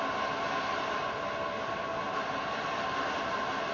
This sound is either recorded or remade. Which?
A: recorded